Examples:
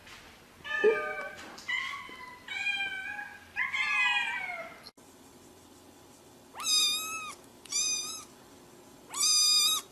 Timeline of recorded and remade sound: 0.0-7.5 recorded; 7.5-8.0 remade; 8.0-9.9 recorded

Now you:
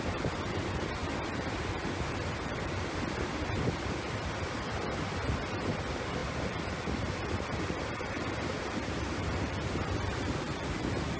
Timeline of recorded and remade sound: 0.0-11.2 remade

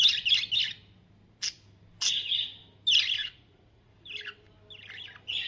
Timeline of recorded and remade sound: 0.0-3.2 recorded; 3.2-3.9 remade; 3.9-5.5 recorded

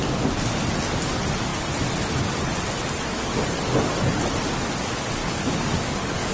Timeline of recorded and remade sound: 0.0-5.2 recorded; 5.2-6.3 remade

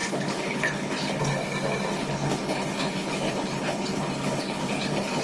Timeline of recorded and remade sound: 0.0-1.2 remade; 1.2-1.9 recorded; 1.9-5.2 remade

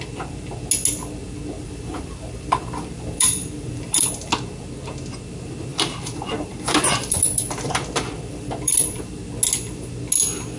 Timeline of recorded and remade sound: 0.0-1.6 recorded; 1.6-4.1 remade; 4.1-5.7 recorded; 5.7-9.0 remade; 9.0-10.6 recorded

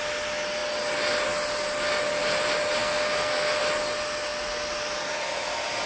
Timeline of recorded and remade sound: 0.0-2.8 recorded; 2.8-3.6 remade; 3.6-5.9 recorded

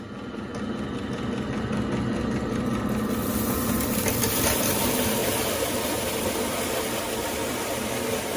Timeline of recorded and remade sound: 0.0-8.4 recorded